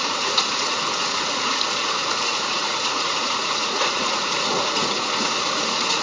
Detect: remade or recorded remade